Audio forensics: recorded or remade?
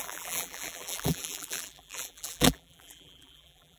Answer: remade